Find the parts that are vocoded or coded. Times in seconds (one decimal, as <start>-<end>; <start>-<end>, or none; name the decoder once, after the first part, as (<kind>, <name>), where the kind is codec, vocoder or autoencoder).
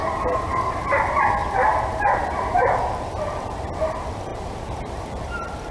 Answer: 4.3-5.7 (vocoder, BigVGAN v2)